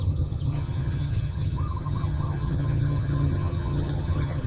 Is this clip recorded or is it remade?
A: remade